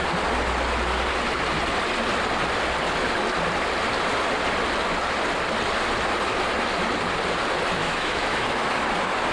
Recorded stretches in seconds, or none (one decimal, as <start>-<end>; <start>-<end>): 0.0-7.8; 8.6-9.3